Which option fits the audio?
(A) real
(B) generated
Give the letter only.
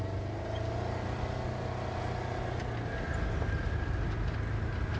A